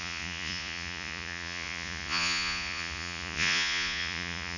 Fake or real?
fake